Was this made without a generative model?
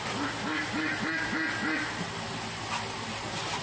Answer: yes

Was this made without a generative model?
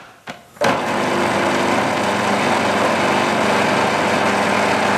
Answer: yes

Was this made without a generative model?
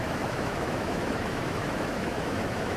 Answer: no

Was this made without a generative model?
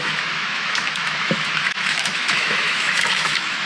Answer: no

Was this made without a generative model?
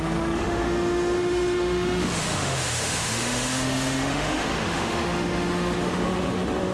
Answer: no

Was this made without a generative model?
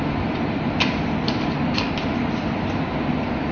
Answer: yes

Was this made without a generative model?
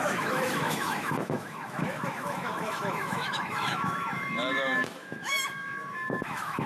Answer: no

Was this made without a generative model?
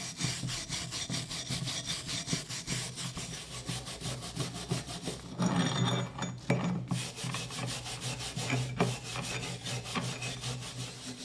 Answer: yes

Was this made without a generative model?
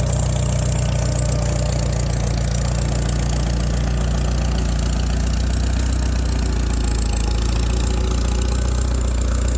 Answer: yes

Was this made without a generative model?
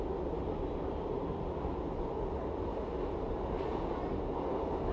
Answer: yes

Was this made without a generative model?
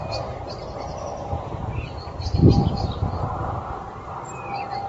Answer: yes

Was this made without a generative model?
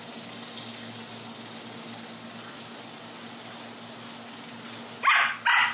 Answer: yes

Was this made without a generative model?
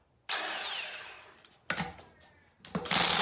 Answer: yes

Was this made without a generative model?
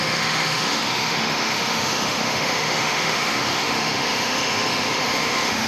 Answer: no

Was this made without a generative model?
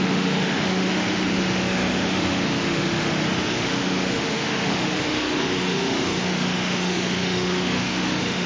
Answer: no